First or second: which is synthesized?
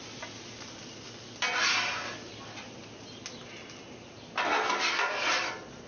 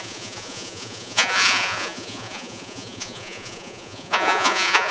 second